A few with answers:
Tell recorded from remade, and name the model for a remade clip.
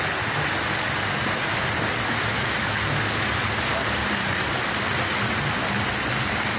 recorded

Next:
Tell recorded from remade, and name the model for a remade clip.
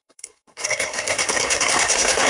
remade, codec, SNAC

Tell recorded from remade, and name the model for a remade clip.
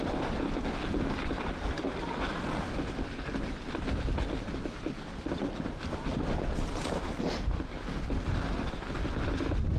recorded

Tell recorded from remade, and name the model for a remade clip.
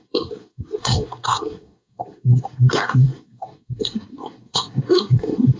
remade, codec, SNAC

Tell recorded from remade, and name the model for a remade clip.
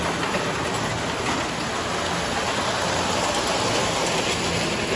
recorded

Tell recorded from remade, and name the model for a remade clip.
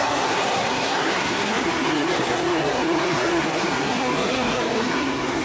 remade, codec, SNAC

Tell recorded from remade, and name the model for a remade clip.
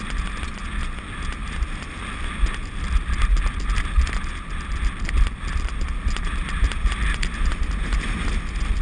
recorded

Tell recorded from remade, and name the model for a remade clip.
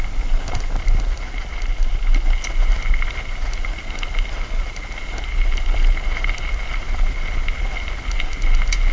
recorded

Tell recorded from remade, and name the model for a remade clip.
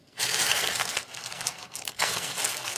remade, codec, SNAC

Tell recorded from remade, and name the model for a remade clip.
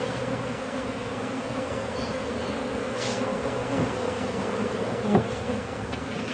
remade, codec, SNAC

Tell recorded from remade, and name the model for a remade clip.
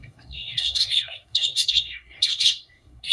remade, codec, SNAC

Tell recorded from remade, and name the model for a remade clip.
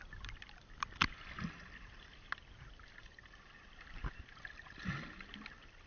recorded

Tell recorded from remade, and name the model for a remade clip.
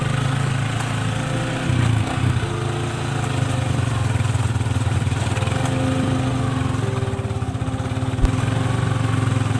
recorded